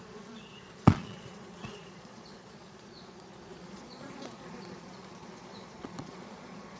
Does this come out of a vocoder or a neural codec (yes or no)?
yes